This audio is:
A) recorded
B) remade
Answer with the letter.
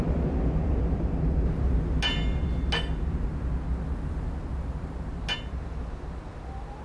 A